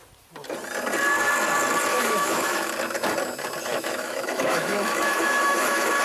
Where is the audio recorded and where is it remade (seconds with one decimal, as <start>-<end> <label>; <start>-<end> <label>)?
0.0-1.9 recorded; 1.9-2.7 remade; 2.7-3.7 recorded; 3.7-6.0 remade